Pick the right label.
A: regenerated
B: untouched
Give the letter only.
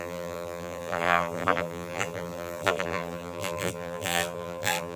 A